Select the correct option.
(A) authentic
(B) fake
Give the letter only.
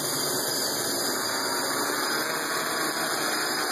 A